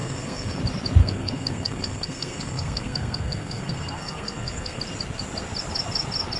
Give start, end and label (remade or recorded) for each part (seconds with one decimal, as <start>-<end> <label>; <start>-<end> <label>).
0.0-0.6 remade; 0.6-1.0 recorded; 1.0-4.8 remade; 4.8-6.4 recorded

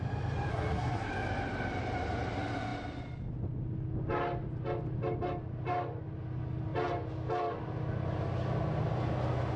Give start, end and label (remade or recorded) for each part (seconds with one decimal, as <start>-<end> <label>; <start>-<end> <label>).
0.0-0.5 recorded; 0.5-1.1 remade; 1.1-9.6 recorded

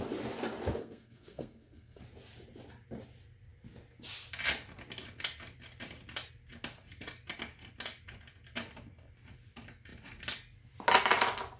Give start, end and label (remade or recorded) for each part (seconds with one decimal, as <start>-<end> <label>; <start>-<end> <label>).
0.0-0.8 recorded; 0.8-2.0 remade; 2.0-11.6 recorded

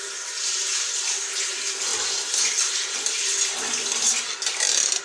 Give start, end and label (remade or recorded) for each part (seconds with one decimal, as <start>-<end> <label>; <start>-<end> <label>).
0.0-5.0 recorded

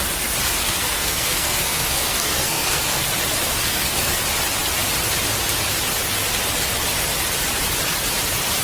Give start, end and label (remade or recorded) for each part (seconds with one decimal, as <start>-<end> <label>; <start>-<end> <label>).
0.0-0.6 recorded; 0.6-3.1 remade; 3.1-3.5 recorded; 3.5-4.2 remade; 4.2-8.6 recorded

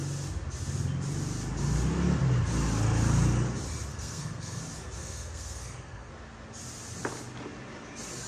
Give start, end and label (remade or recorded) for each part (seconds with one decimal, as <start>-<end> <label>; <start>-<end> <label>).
0.0-3.9 recorded; 3.9-4.6 remade; 4.6-5.0 recorded; 5.0-6.1 remade; 6.1-8.3 recorded

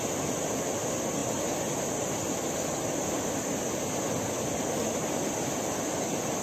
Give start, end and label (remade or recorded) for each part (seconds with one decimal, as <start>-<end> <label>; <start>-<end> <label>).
0.0-6.4 recorded

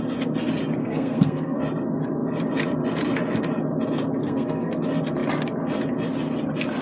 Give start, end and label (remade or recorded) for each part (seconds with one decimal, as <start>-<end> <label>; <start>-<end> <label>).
0.0-0.8 recorded; 0.8-1.6 remade; 1.6-4.2 recorded; 4.2-4.8 remade; 4.8-6.8 recorded